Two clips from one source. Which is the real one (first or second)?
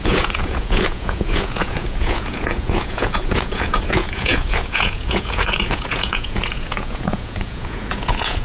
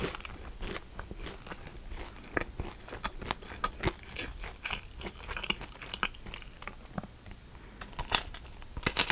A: second